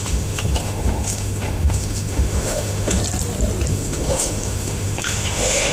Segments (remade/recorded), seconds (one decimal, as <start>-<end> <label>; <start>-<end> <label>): 0.0-3.0 remade; 3.0-3.7 recorded; 3.7-5.7 remade